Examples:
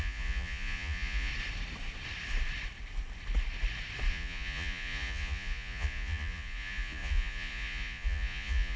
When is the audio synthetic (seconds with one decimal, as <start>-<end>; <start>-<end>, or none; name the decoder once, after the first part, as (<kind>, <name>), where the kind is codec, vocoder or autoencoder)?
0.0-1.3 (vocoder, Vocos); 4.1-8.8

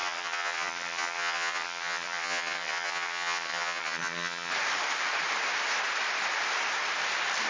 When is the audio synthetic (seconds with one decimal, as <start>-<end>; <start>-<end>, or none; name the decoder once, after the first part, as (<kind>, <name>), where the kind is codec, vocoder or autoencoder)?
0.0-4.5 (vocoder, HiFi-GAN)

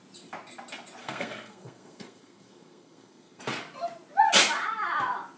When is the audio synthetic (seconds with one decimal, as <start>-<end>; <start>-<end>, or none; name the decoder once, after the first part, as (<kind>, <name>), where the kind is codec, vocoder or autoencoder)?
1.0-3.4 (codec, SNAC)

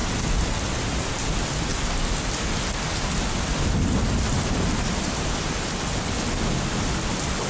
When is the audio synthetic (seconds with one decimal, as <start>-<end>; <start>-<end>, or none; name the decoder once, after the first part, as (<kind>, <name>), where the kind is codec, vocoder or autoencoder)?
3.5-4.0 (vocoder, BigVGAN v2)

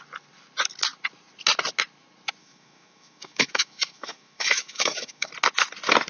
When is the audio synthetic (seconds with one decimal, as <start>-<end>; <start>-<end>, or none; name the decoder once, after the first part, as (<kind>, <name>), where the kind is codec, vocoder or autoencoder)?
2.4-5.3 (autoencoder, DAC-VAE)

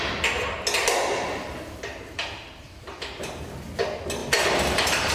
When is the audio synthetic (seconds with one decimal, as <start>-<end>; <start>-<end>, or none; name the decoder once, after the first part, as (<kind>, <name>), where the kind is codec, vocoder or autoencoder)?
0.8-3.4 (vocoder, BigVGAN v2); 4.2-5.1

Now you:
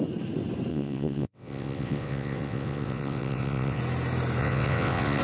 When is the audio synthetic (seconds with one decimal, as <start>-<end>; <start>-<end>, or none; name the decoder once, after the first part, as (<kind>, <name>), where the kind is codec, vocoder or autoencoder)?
0.7-3.8 (vocoder, WaveNeXt); 4.4-5.2